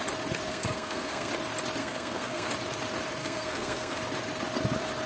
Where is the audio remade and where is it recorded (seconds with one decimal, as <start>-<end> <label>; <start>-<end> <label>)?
0.0-0.5 recorded; 0.5-1.3 remade; 1.3-1.8 recorded; 1.8-2.5 remade; 2.5-3.2 recorded; 3.2-4.0 remade; 4.0-5.1 recorded